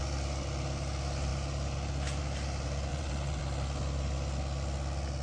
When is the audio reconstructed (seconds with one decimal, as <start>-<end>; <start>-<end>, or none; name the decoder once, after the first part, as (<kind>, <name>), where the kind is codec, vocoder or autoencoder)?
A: 2.9-3.4 (vocoder, WaveNeXt)